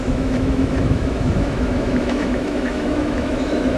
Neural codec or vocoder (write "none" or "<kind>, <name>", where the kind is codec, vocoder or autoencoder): autoencoder, DAC-VAE